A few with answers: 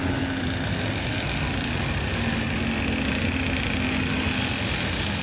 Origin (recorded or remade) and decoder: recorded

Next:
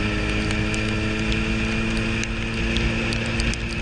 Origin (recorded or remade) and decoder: recorded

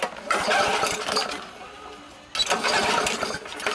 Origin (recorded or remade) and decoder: recorded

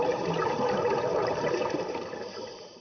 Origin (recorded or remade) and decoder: remade, vocoder, BigVGAN v2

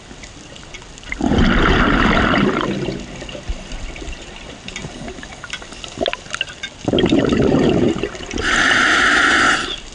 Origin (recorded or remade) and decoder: recorded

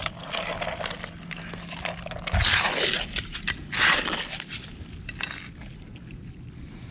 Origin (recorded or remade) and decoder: recorded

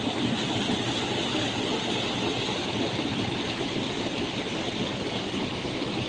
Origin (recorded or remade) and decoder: recorded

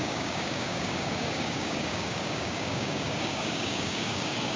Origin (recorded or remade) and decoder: remade, codec, DAC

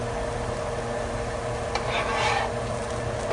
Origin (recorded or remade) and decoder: recorded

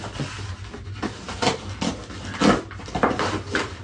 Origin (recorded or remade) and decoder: recorded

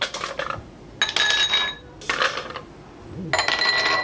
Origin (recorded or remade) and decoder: recorded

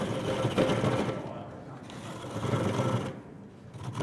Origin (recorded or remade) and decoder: recorded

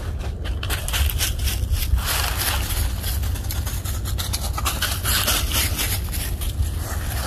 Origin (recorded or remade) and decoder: recorded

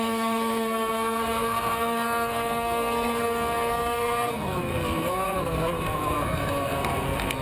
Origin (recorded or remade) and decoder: remade, codec, SNAC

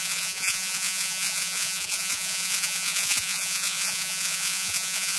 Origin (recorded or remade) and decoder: remade, vocoder, Vocos